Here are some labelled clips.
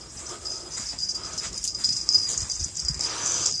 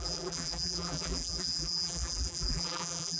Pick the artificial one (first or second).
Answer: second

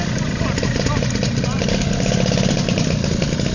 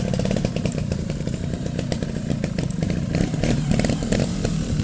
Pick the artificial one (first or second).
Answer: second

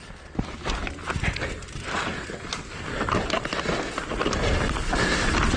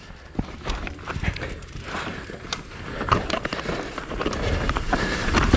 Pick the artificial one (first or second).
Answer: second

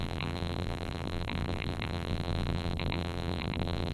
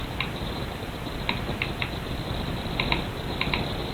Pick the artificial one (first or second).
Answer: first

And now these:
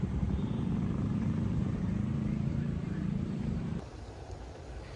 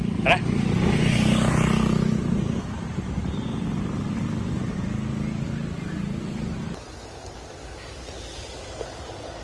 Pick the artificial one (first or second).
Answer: first